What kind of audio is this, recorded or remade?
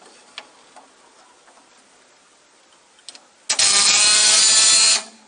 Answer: recorded